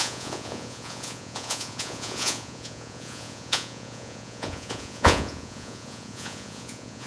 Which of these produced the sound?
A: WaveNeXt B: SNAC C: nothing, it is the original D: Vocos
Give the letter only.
D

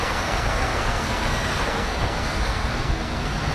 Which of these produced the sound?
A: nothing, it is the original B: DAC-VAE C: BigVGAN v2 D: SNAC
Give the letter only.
D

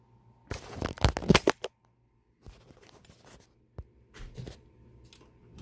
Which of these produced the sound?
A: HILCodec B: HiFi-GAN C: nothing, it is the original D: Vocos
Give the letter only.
C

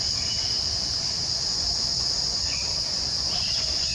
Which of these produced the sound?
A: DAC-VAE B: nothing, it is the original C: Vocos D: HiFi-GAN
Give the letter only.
C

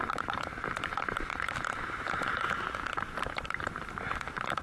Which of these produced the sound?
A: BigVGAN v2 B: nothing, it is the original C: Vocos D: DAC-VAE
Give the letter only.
A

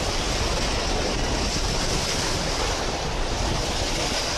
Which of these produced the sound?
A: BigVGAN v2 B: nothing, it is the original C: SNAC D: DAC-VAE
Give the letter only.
B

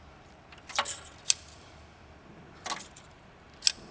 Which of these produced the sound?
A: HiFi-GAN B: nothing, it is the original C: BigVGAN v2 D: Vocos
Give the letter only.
B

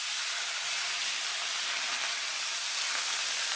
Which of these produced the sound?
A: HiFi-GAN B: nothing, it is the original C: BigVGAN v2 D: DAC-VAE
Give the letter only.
B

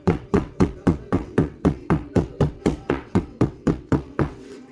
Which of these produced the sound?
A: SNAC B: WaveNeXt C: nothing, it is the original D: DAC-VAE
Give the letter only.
B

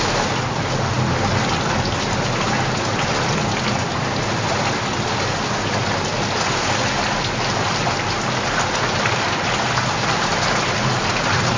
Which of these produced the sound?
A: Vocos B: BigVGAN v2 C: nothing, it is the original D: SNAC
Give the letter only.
C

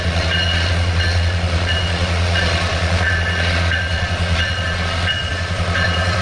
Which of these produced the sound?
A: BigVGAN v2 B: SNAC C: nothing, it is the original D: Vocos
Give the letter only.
D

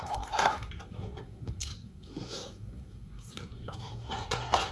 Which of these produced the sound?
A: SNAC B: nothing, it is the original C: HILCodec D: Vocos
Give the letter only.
A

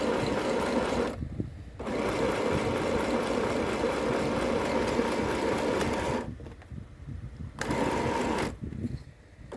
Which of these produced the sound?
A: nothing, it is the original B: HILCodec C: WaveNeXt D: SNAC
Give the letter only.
A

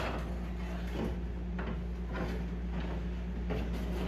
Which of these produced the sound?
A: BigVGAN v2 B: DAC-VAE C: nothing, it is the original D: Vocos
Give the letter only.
C